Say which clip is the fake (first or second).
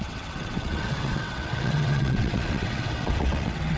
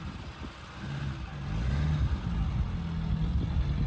first